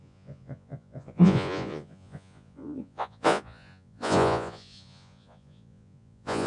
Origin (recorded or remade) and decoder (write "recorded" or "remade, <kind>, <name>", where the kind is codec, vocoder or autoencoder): remade, vocoder, Vocos